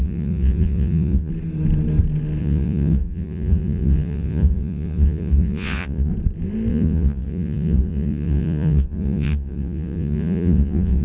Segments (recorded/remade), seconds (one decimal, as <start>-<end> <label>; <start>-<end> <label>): 0.0-1.3 remade; 1.3-2.4 recorded; 2.4-6.1 remade; 6.1-6.7 recorded; 6.7-11.0 remade